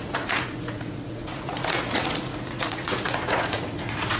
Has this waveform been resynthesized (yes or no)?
yes